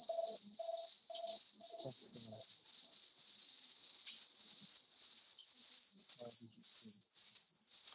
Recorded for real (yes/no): yes